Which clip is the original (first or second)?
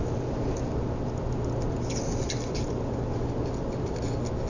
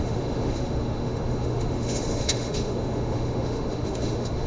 first